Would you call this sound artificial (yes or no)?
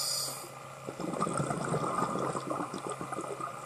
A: no